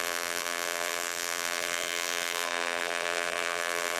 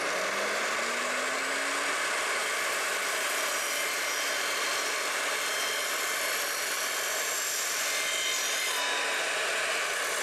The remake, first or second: first